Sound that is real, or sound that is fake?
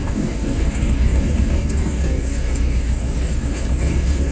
fake